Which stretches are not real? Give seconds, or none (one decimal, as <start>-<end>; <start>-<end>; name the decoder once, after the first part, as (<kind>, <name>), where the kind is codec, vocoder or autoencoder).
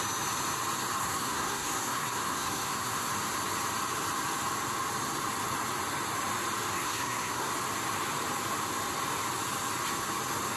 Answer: 1.0-3.1 (codec, SNAC); 6.7-7.5